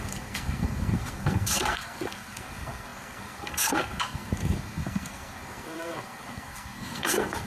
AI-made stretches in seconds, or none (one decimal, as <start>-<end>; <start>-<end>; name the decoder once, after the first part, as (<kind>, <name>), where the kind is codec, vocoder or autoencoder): 0.0-7.5 (codec, SNAC)